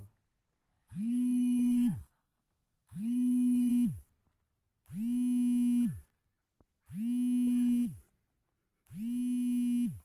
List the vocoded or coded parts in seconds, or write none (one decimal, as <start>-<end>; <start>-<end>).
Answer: 0.7-3.7